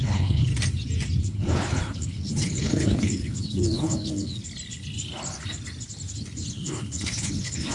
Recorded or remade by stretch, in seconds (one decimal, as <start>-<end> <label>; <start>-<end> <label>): 0.0-0.5 remade; 0.5-1.2 recorded; 1.2-4.4 remade; 4.4-6.5 recorded; 6.5-7.7 remade